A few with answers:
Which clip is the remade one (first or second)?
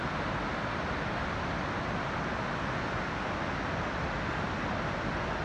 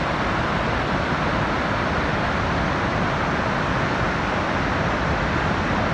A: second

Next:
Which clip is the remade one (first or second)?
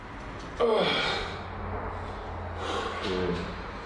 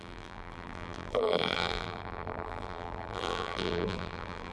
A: second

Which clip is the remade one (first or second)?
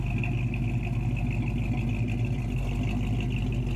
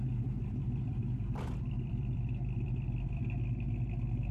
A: second